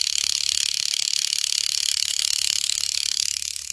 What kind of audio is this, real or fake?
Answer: fake